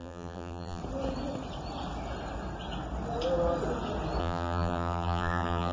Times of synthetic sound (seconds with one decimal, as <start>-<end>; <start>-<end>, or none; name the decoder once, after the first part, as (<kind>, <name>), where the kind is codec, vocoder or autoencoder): 0.0-0.8 (vocoder, BigVGAN v2); 4.2-5.7